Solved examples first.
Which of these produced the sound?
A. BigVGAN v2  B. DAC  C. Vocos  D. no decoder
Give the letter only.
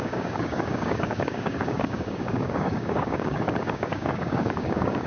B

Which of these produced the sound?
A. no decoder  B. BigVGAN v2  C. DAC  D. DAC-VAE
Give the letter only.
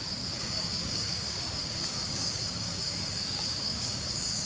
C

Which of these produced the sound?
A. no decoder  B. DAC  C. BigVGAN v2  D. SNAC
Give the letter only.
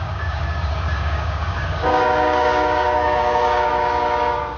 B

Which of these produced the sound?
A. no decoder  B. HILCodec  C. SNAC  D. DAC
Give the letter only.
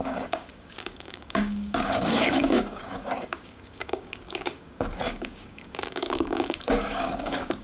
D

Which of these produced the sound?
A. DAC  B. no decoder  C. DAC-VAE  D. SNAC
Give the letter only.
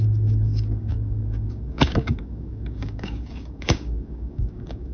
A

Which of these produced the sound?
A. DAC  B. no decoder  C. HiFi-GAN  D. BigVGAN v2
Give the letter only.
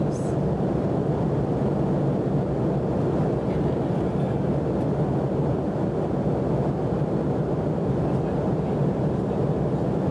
B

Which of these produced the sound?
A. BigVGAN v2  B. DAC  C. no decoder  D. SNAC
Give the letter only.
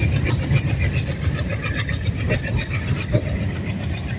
C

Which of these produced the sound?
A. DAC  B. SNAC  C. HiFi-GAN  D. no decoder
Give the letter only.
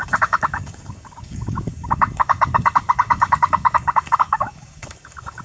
A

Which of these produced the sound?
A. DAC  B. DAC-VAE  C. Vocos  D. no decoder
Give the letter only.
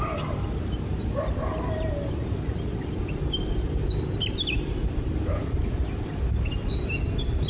D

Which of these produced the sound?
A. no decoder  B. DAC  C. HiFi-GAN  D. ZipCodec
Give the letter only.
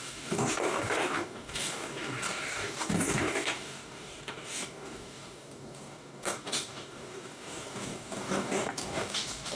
B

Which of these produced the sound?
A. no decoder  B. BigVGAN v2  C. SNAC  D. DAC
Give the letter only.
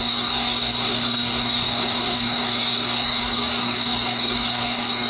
D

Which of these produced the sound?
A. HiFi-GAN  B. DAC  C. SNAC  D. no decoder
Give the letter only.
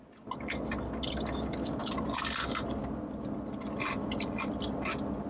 D